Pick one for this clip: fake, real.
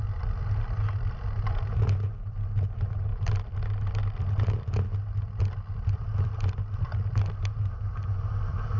real